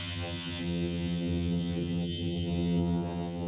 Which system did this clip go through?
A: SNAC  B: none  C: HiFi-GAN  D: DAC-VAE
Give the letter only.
C